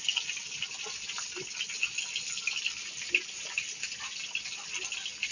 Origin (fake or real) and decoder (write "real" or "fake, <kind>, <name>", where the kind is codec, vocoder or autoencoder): real